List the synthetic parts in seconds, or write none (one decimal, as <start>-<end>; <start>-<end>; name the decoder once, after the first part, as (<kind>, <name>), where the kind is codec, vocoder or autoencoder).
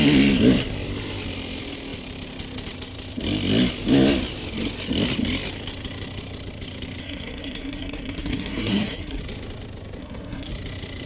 7.0-9.2 (codec, SNAC); 10.0-10.5